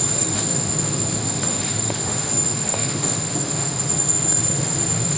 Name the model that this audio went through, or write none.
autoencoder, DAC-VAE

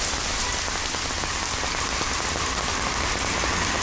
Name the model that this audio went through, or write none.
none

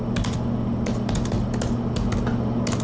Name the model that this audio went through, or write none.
none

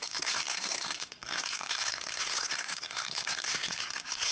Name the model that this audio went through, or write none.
codec, SNAC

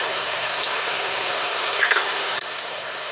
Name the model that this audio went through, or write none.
codec, SNAC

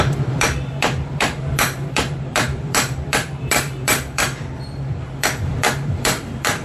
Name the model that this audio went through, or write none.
vocoder, BigVGAN v2